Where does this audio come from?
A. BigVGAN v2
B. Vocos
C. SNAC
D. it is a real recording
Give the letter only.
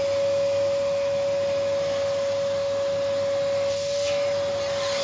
D